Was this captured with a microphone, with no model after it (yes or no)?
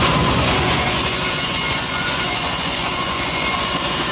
no